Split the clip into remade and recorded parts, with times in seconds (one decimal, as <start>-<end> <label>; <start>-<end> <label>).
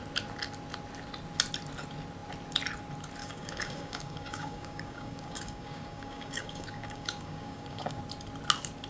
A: 0.0-3.2 recorded; 3.2-8.0 remade; 8.0-8.9 recorded